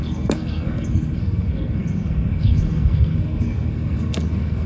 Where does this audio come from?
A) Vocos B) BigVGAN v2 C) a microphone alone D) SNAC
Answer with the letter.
D